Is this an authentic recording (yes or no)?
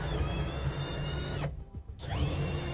no